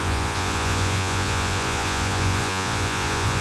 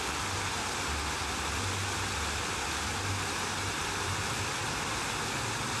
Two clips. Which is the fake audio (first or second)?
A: first